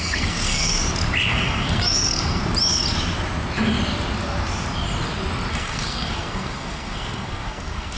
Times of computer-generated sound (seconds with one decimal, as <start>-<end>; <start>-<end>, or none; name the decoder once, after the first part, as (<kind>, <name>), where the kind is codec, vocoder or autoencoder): 0.0-0.8 (codec, SNAC); 1.3-2.4; 5.5-8.0